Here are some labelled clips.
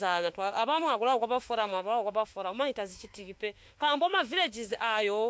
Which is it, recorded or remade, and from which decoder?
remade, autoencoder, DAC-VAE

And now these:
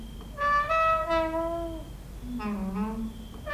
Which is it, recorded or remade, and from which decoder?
recorded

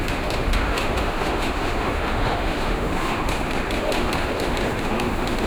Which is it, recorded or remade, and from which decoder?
remade, autoencoder, DAC-VAE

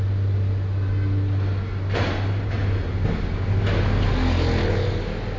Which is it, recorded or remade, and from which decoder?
recorded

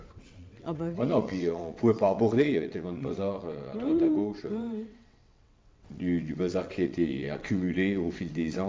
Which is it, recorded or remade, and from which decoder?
remade, vocoder, WaveNeXt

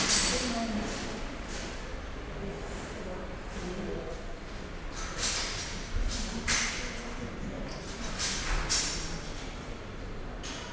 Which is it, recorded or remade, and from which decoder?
recorded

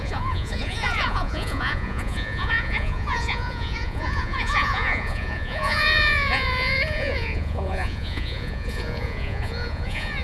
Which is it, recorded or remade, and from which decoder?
remade, vocoder, Vocos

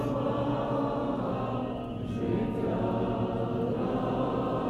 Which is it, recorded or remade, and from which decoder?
recorded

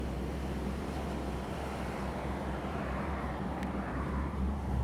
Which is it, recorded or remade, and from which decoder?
remade, vocoder, BigVGAN v2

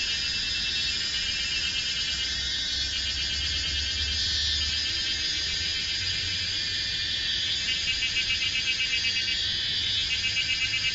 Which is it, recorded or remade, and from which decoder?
recorded